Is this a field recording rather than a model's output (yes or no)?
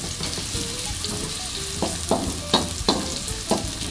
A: yes